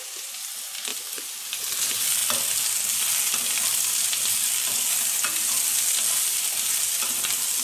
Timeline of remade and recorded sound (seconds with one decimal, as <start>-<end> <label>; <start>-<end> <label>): 0.0-7.6 recorded